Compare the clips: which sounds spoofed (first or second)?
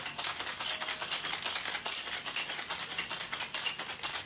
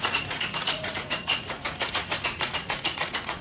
second